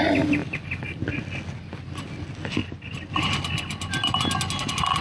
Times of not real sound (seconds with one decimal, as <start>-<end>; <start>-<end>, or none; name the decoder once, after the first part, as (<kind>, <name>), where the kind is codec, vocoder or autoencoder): none